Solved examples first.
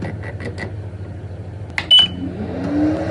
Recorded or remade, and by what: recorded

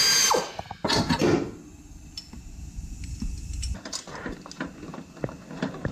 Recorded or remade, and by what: recorded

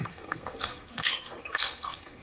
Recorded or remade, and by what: remade, codec, SNAC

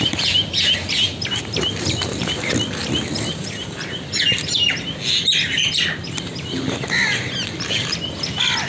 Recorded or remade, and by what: recorded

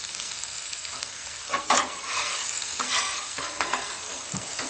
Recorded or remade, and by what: remade, codec, SNAC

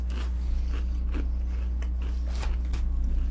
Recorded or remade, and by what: recorded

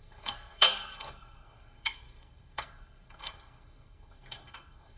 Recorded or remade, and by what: remade, codec, SNAC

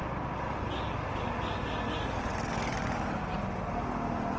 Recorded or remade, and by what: recorded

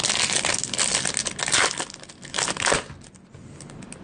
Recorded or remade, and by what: recorded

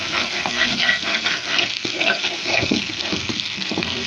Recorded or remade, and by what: remade, codec, SNAC